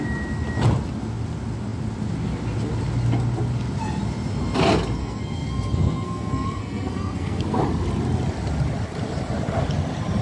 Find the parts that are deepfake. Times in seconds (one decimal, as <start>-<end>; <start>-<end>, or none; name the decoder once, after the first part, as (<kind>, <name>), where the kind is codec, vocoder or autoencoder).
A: 5.0-7.6 (codec, SNAC)

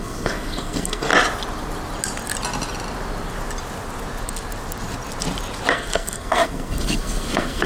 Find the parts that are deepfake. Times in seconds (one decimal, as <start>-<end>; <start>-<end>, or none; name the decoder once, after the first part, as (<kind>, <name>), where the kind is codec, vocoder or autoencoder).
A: 0.0-1.1 (codec, SNAC); 5.7-7.7

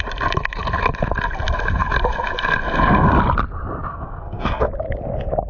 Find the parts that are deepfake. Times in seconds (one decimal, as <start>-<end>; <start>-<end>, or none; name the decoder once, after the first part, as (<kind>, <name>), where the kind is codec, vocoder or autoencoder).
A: 3.9-4.7 (codec, SNAC)

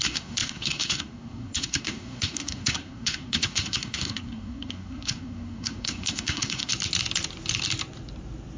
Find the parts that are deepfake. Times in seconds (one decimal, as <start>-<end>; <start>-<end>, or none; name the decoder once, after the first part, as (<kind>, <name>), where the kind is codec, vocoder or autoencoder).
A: 0.0-6.7 (codec, SNAC)

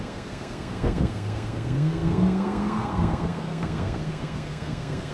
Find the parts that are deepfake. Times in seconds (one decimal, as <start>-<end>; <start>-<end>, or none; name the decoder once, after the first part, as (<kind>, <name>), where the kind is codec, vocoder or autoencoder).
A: 0.0-5.1 (codec, SNAC)